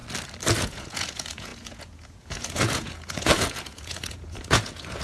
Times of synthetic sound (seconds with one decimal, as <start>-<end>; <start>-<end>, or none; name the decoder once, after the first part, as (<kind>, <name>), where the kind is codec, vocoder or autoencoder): 0.6-5.0 (vocoder, Vocos)